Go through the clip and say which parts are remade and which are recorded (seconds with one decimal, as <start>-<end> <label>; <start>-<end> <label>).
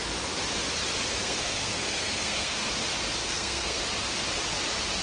0.0-1.2 recorded; 1.2-2.7 remade; 2.7-3.2 recorded; 3.2-3.8 remade; 3.8-5.0 recorded